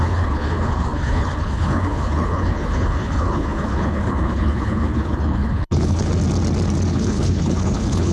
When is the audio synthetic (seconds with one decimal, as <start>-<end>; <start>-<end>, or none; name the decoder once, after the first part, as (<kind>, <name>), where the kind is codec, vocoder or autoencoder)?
0.0-6.1 (codec, HILCodec); 6.9-8.1